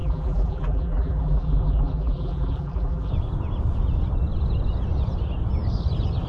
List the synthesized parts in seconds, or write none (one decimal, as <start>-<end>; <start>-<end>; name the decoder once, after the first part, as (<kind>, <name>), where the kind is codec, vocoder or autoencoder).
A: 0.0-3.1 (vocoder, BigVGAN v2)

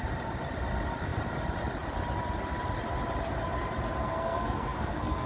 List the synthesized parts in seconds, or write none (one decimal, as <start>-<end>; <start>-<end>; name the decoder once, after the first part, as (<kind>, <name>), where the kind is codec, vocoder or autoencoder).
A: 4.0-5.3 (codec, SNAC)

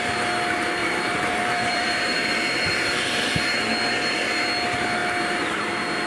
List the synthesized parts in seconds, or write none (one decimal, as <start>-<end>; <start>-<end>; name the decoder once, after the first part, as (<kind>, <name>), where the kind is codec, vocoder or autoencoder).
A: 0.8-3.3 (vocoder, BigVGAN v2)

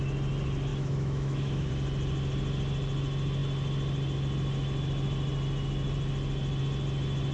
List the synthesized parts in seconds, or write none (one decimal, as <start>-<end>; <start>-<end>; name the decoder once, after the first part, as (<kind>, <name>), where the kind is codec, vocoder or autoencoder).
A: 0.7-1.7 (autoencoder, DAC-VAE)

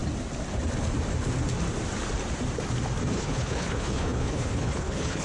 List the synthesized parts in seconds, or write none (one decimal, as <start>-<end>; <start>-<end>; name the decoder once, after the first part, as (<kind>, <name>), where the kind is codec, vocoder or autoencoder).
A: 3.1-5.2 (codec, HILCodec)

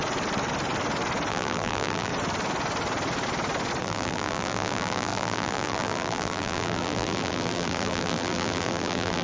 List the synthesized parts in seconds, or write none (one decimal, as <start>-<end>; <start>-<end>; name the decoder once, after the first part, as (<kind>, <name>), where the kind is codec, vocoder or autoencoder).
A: 1.3-2.1 (vocoder, BigVGAN v2); 3.8-9.2

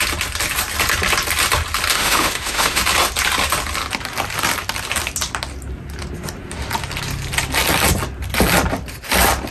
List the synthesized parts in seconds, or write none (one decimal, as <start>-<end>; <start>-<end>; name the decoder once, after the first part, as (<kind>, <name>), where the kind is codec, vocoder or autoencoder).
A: 1.9-2.8 (autoencoder, DAC-VAE)

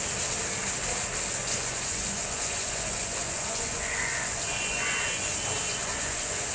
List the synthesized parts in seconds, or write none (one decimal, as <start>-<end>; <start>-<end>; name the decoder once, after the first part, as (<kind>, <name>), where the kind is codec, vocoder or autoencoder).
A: 1.4-5.3 (vocoder, Vocos); 5.7-6.5